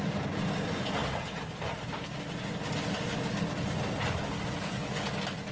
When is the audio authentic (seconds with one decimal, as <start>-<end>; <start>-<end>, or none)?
0.0-5.5